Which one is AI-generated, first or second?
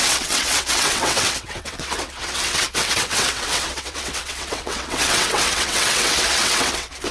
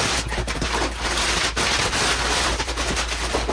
first